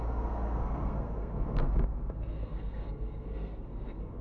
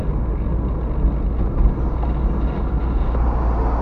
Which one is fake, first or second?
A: first